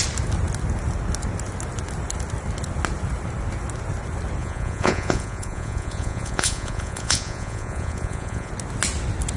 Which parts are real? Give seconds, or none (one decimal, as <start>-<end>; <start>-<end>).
0.0-4.4; 8.5-9.4